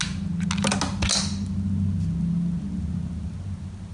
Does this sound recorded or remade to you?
recorded